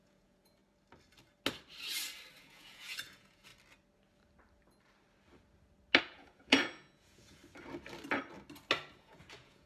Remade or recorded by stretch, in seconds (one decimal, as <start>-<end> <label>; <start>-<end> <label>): 0.0-0.6 remade; 0.6-2.4 recorded; 2.4-3.5 remade; 3.5-6.0 recorded; 6.0-7.4 remade; 7.4-8.9 recorded; 8.9-9.7 remade